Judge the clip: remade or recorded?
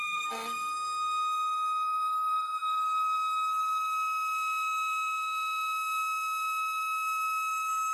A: remade